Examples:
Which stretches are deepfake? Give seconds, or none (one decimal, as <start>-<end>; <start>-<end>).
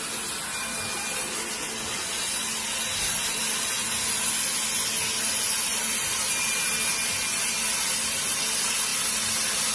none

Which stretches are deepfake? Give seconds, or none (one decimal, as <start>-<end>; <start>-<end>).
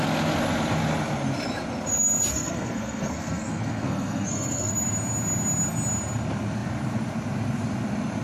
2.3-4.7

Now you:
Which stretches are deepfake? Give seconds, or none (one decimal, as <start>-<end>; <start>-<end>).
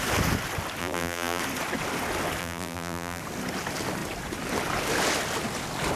0.8-1.4; 2.4-3.2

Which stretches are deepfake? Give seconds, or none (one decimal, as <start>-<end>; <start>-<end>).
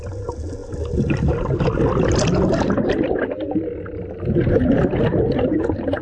none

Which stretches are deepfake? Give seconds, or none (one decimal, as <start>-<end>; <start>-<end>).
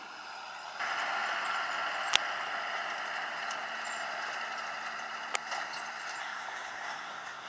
6.2-7.5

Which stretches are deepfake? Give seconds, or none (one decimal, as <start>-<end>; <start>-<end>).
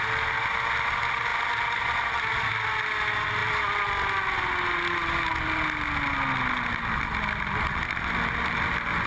none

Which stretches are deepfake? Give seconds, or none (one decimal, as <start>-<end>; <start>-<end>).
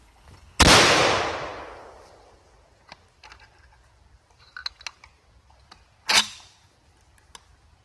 0.0-0.6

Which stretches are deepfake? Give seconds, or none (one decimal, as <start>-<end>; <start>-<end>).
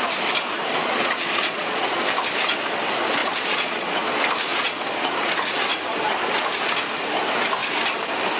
0.8-2.1; 3.2-3.9; 4.5-5.3